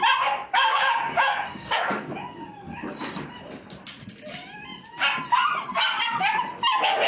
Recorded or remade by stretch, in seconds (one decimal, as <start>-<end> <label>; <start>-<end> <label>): 0.0-0.4 recorded; 0.4-3.3 remade; 3.3-7.1 recorded